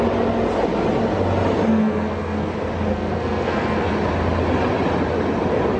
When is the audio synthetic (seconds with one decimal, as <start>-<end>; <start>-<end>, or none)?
1.7-2.5; 2.9-3.9